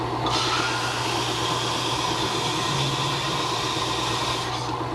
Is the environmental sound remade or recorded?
recorded